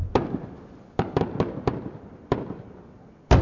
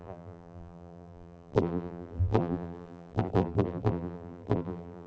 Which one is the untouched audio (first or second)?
first